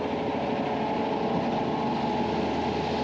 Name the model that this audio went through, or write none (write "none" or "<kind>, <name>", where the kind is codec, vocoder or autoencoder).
none